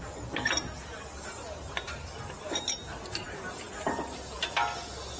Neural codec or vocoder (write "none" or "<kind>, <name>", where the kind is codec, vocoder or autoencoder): none